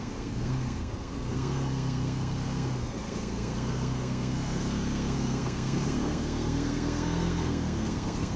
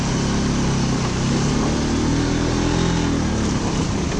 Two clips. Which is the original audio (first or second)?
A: second